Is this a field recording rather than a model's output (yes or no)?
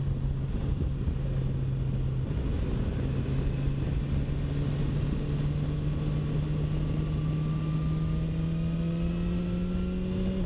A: yes